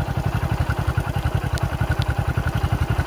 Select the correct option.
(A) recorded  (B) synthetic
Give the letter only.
A